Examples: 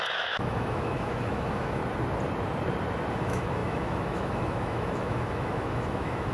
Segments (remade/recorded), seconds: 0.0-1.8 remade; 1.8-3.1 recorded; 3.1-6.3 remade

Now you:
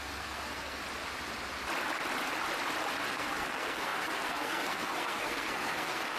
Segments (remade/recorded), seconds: 0.0-0.8 remade; 0.8-3.1 recorded; 3.1-6.2 remade

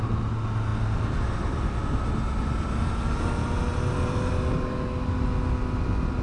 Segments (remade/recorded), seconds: 0.0-6.2 recorded

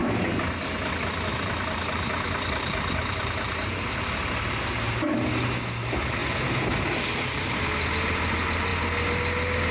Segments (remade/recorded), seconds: 0.0-1.3 recorded; 1.3-3.8 remade; 3.8-9.7 recorded